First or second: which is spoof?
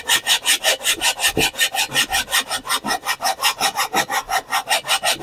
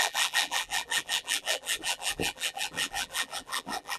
second